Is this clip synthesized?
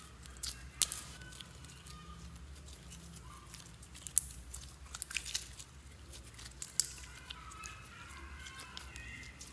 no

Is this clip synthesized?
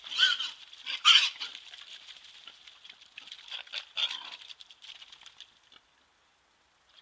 no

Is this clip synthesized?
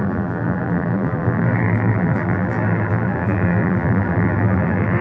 yes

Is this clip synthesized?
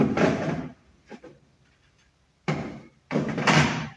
yes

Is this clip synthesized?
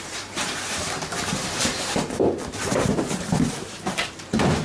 yes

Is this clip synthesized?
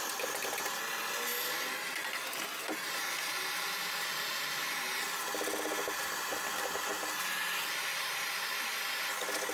no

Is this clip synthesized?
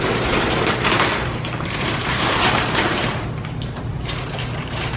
yes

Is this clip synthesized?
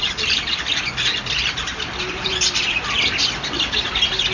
yes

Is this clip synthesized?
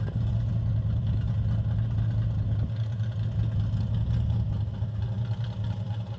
no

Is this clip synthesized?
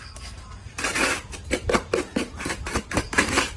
yes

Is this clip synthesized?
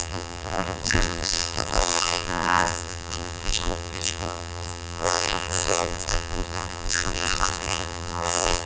yes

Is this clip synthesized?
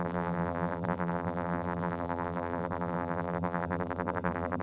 yes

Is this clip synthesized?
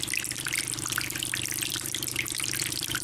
yes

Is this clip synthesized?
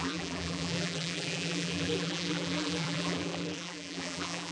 yes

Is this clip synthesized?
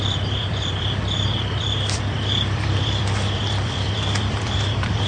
yes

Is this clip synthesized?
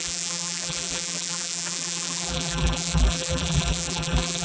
yes